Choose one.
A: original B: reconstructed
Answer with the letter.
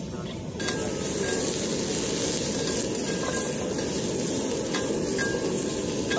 A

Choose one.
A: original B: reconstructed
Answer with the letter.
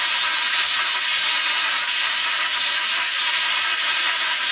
B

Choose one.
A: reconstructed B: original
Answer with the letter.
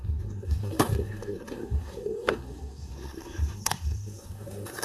A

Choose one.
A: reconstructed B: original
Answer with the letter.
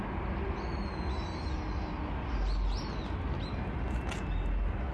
B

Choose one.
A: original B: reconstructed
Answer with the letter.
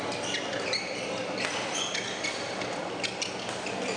A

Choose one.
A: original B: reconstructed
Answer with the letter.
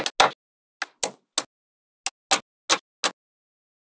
A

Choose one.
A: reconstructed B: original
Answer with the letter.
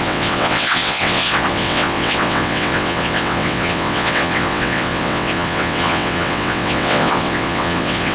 A